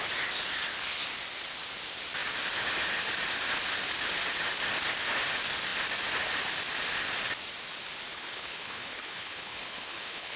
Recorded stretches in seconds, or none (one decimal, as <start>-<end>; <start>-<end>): 0.0-8.1